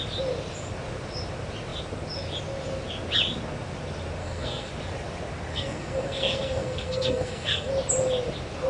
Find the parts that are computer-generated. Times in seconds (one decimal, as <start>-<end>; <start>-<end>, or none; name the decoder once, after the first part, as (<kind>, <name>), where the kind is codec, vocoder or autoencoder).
4.2-4.7 (codec, SNAC); 5.5-7.7